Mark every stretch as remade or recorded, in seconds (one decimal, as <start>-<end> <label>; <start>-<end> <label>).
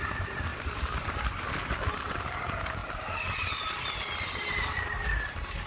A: 0.0-5.7 recorded